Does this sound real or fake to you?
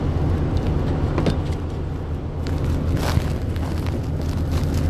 real